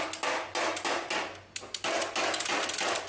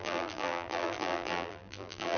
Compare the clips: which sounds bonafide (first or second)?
first